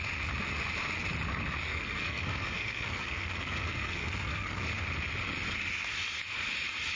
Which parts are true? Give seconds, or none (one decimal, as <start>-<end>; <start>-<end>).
0.0-1.7; 4.6-7.0